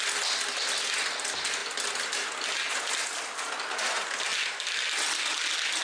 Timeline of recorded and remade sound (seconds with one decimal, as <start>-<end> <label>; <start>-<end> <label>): 0.0-5.8 recorded